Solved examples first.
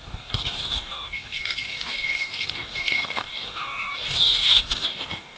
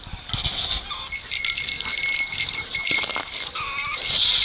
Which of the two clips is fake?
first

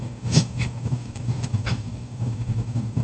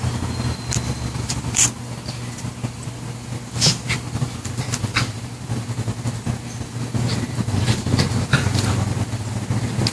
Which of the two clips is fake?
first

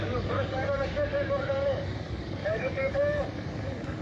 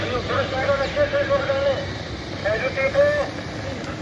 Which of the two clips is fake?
first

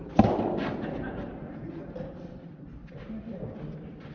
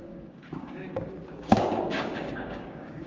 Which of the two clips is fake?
second